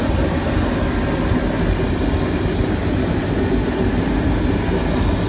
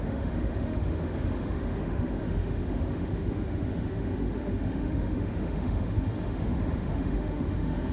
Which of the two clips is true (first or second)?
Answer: first